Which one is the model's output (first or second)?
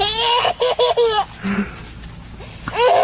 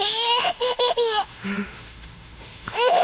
second